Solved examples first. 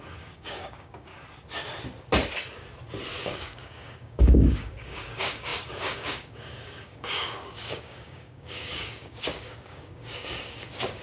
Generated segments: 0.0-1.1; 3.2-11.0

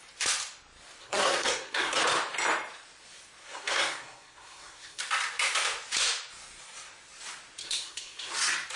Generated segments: 1.0-2.0; 3.4-5.0; 7.6-8.3

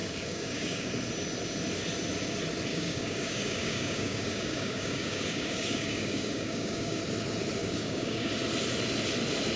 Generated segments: 0.0-0.9; 2.7-7.0; 7.6-8.3